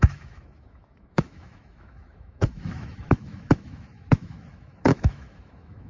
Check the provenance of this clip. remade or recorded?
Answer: remade